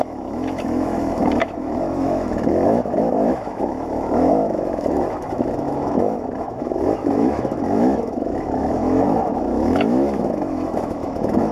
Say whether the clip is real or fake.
fake